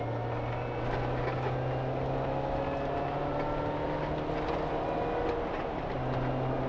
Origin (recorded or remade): recorded